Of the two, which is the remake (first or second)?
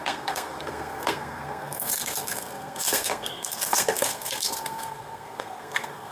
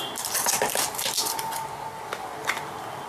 first